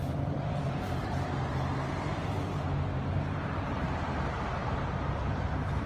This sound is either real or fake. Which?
fake